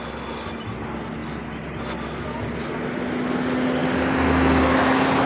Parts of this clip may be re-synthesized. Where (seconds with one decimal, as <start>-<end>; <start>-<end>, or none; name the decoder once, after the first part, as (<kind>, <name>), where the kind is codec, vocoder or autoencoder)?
none